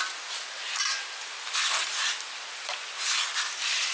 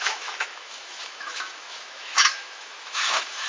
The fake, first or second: second